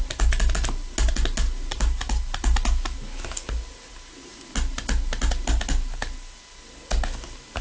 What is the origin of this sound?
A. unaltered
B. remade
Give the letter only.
A